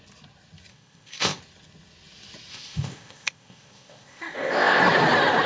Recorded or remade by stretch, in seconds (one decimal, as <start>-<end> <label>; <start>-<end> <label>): 0.0-0.7 recorded; 0.7-1.4 remade; 1.4-2.5 recorded; 2.5-4.8 remade; 4.8-5.5 recorded